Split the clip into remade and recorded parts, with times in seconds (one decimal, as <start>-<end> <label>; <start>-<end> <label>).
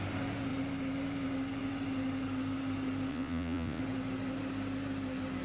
0.0-3.1 recorded; 3.1-3.8 remade; 3.8-5.4 recorded